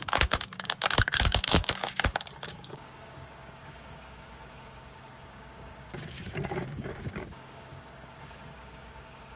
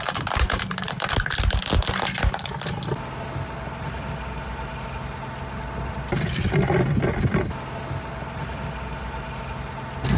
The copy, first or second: first